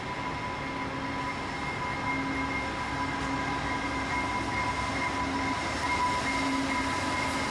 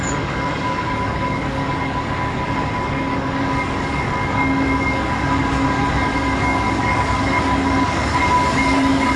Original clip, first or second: first